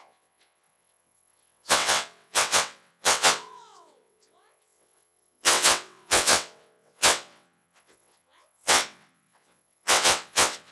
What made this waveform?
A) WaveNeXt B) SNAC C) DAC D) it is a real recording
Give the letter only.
A